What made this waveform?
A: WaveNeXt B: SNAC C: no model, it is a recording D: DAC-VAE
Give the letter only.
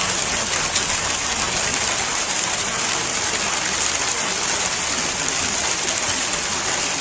C